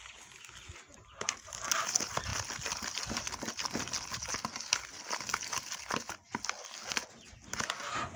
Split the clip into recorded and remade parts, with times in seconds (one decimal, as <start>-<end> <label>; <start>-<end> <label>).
0.0-8.2 recorded